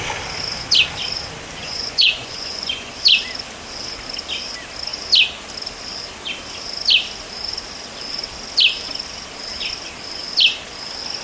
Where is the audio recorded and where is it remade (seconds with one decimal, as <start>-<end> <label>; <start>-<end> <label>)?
0.0-1.6 recorded; 1.6-2.9 remade; 2.9-11.2 recorded